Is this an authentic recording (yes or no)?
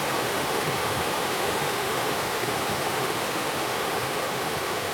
no